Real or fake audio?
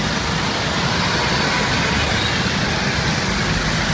real